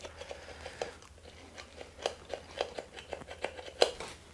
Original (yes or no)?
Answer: yes